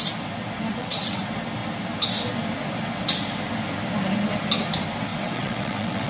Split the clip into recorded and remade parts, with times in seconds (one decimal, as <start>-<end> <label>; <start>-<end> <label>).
0.0-0.7 recorded; 0.7-1.2 remade; 1.2-5.1 recorded; 5.1-6.1 remade